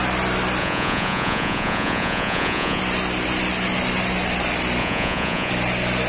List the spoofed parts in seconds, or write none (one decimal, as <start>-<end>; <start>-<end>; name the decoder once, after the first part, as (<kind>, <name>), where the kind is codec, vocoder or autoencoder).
0.6-2.8 (vocoder, Vocos); 4.8-5.5